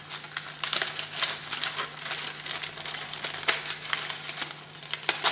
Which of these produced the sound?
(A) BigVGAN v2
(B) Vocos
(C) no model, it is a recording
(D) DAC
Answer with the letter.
C